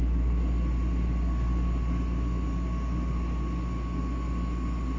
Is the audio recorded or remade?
recorded